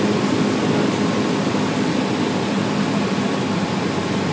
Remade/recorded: recorded